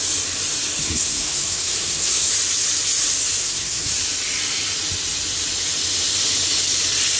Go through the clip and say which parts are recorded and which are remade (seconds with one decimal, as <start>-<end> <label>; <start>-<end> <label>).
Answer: 0.0-0.8 recorded; 0.8-2.3 remade; 2.3-3.4 recorded; 3.4-3.9 remade; 3.9-7.2 recorded